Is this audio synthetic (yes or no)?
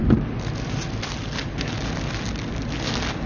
no